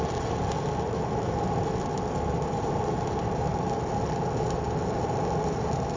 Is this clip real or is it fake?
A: real